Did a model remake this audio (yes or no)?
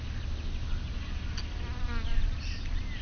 no